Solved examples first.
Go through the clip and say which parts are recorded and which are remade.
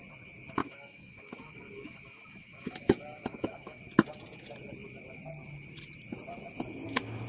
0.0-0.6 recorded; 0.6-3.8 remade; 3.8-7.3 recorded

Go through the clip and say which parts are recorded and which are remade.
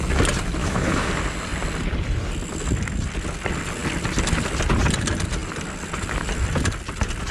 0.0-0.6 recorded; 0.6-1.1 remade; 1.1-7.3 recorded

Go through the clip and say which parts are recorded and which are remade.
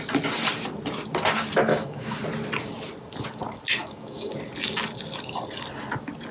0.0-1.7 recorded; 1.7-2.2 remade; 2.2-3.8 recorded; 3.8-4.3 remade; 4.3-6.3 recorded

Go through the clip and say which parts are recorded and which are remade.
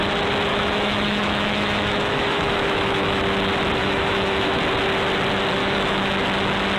0.0-0.5 recorded; 0.5-3.2 remade; 3.2-3.8 recorded; 3.8-4.6 remade; 4.6-5.6 recorded; 5.6-6.1 remade; 6.1-6.8 recorded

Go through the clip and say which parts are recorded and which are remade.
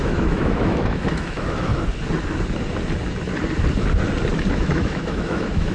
0.0-1.7 remade; 1.7-4.5 recorded; 4.5-5.7 remade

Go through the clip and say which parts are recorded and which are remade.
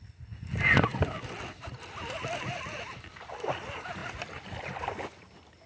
0.0-5.7 recorded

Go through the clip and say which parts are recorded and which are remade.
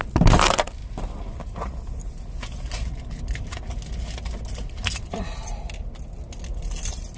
0.0-7.2 recorded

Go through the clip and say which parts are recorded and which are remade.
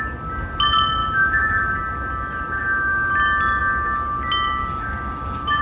0.0-1.0 recorded; 1.0-1.7 remade; 1.7-4.6 recorded; 4.6-5.6 remade